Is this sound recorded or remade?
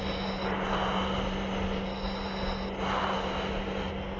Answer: recorded